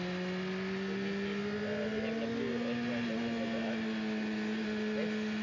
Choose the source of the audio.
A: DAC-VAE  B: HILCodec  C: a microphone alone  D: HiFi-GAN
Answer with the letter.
C